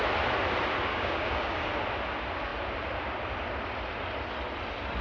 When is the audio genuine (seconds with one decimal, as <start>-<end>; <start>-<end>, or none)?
0.0-0.9; 1.7-5.0